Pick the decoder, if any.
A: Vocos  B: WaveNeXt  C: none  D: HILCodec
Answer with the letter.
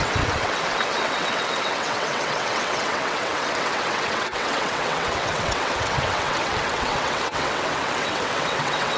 B